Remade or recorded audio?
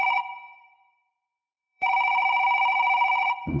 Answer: remade